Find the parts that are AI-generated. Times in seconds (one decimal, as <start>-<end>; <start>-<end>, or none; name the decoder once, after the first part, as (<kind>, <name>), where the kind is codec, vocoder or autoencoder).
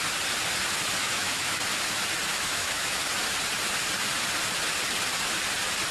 1.0-1.6 (autoencoder, DAC-VAE); 2.3-3.0